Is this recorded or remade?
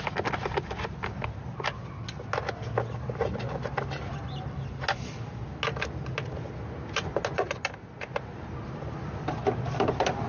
recorded